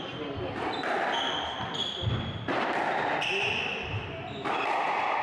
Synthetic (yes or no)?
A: yes